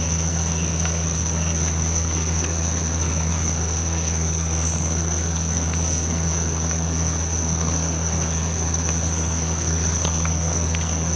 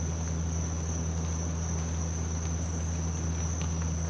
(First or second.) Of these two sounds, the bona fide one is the second